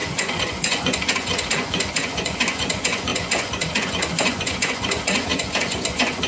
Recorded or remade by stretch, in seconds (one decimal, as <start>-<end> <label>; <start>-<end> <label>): 0.0-6.3 remade